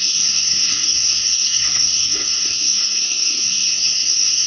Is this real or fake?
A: fake